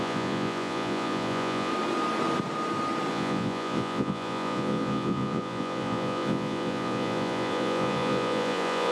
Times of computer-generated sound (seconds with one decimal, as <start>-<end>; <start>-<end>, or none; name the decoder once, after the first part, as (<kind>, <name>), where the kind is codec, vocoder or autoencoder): 0.0-1.7 (vocoder, Vocos); 3.1-8.9